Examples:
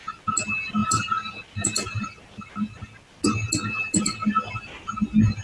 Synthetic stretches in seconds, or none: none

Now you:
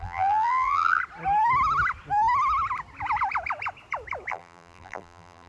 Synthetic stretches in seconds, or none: 0.0-1.0 (vocoder, BigVGAN v2); 4.3-5.5